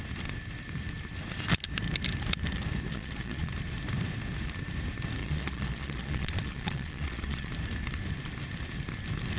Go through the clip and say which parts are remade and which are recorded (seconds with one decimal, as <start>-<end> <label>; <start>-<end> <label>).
0.0-2.9 recorded; 2.9-3.5 remade; 3.5-5.2 recorded; 5.2-7.5 remade; 7.5-9.4 recorded